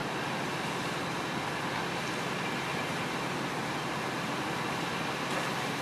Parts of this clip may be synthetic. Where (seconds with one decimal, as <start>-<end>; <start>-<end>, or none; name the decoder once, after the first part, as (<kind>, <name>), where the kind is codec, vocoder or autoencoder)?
none